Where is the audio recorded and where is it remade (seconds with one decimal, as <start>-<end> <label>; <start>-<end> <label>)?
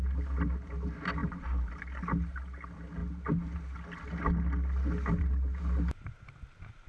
0.0-1.2 recorded; 1.2-2.0 remade; 2.0-6.9 recorded